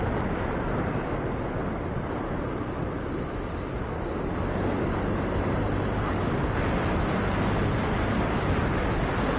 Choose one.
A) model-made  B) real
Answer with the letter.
B